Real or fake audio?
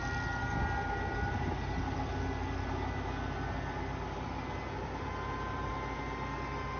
real